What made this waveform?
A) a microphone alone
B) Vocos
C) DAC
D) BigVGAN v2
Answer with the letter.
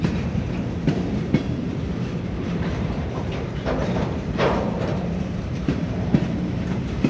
D